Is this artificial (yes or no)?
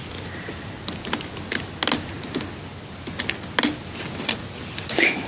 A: no